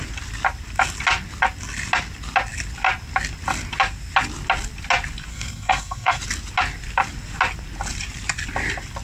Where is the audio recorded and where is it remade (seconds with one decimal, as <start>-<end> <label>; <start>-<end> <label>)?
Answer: 0.0-5.3 recorded; 5.3-6.2 remade; 6.2-9.0 recorded